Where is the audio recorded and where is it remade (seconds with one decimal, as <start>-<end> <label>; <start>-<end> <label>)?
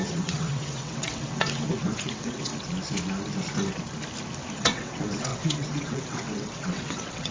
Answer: 0.0-2.5 remade; 2.5-4.5 recorded; 4.5-7.3 remade